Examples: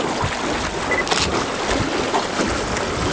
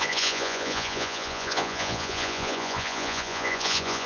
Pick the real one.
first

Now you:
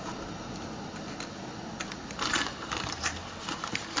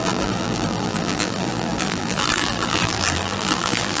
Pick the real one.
first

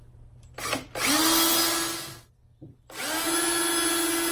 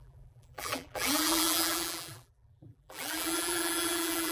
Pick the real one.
first